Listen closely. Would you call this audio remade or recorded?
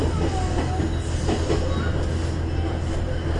recorded